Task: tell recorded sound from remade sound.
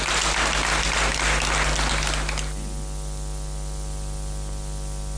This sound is recorded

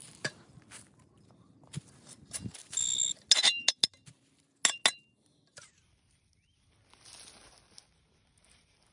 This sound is recorded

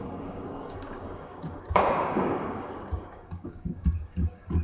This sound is remade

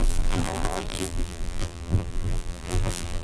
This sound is remade